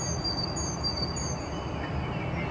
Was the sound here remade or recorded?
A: recorded